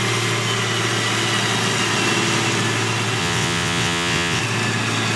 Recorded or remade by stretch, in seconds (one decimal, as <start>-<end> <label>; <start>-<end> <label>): 0.0-3.2 recorded; 3.2-4.4 remade; 4.4-5.2 recorded